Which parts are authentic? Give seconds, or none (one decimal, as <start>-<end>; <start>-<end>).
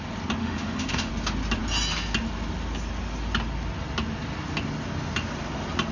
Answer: 0.0-0.4; 1.1-5.9